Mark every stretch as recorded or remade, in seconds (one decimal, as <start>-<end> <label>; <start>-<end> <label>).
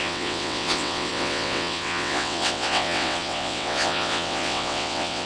0.0-5.3 remade